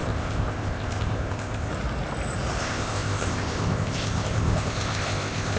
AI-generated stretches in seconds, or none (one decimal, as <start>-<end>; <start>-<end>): 0.0-1.7; 2.6-5.6